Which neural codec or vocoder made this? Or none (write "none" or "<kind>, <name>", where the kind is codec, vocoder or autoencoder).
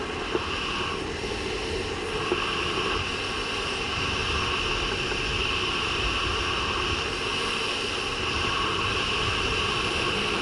vocoder, BigVGAN v2